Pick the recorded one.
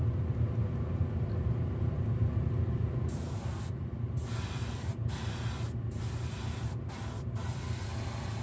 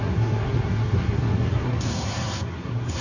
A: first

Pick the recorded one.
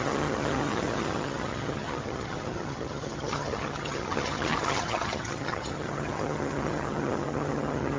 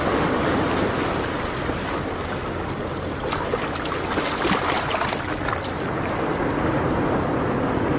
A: second